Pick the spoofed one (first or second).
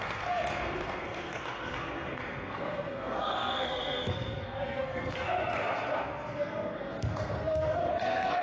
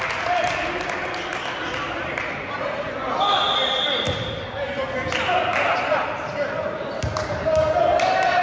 first